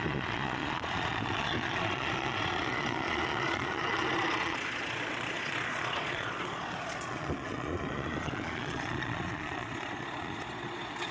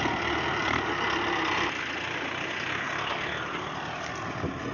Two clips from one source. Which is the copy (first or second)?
first